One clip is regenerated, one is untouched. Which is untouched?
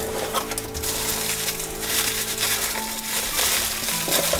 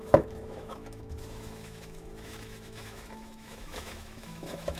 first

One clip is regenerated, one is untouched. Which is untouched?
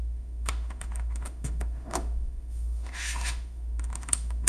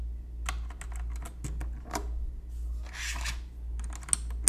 second